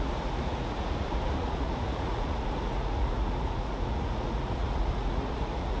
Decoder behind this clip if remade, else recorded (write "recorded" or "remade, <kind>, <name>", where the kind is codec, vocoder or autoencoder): remade, vocoder, Vocos